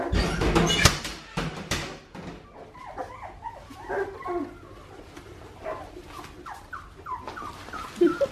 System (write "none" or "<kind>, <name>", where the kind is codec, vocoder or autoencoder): none